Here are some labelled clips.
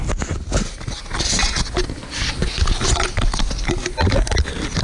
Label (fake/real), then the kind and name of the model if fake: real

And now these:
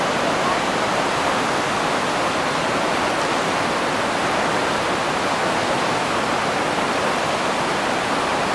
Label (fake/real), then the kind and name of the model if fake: real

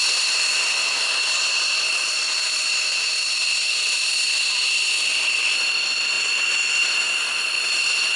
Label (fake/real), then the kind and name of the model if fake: real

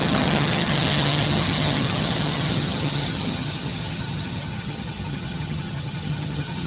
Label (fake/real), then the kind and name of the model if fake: fake, vocoder, HiFi-GAN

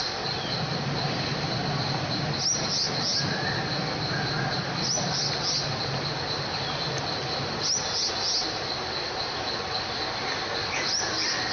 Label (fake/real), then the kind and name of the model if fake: real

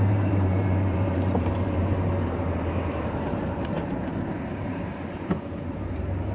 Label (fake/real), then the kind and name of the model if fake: fake, vocoder, BigVGAN v2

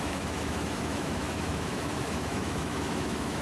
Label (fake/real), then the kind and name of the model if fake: fake, autoencoder, DAC-VAE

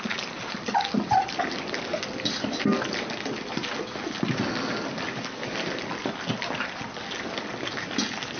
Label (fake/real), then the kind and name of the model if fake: real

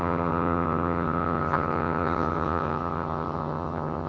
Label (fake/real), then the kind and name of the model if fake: fake, vocoder, HiFi-GAN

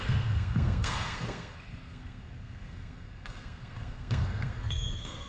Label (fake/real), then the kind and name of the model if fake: fake, codec, SNAC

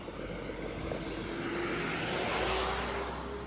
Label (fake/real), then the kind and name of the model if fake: real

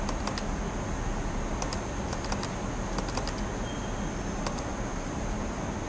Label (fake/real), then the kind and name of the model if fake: real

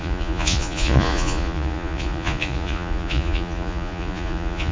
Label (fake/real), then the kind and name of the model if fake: fake, vocoder, Vocos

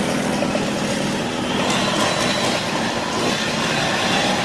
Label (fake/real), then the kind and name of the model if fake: real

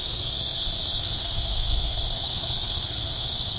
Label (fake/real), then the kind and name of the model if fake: fake, codec, SNAC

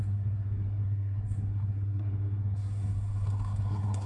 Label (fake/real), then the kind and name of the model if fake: fake, codec, SNAC